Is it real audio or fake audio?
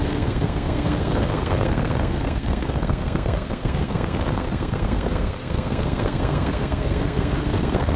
fake